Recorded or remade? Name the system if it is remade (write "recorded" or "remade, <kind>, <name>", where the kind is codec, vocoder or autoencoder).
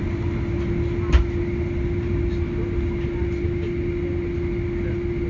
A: recorded